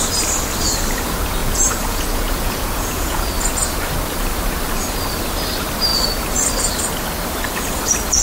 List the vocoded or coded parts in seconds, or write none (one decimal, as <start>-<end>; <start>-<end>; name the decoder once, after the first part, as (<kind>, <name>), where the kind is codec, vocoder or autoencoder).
1.4-3.3 (vocoder, Vocos)